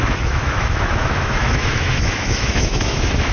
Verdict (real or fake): fake